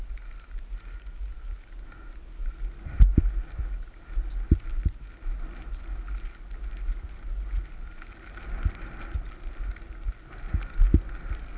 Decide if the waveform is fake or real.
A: real